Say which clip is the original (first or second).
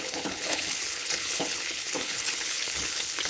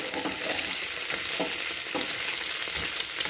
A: second